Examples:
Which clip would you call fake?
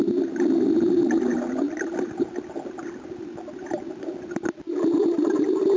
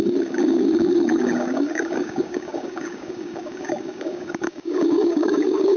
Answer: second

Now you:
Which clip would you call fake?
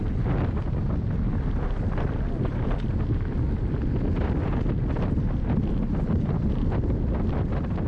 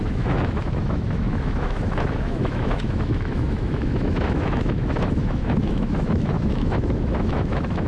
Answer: second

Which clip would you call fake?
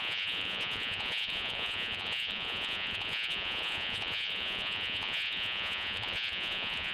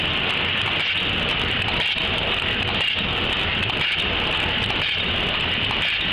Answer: first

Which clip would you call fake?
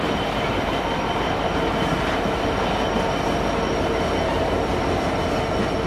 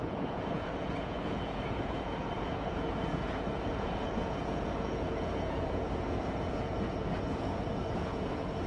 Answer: second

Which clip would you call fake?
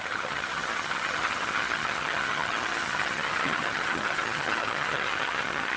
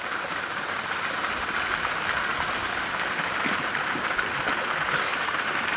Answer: first